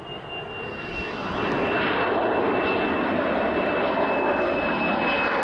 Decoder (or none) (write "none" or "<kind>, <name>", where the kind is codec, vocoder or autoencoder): none